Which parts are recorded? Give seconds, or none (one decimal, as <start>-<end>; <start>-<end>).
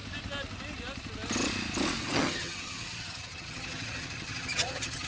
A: 0.0-2.0